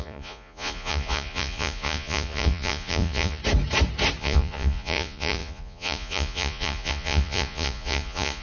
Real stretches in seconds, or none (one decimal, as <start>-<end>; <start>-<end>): 3.4-4.2